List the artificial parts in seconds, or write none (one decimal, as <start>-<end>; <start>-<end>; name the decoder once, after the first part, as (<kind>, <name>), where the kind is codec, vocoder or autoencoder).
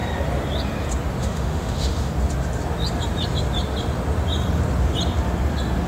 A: 1.2-2.1 (autoencoder, DAC-VAE)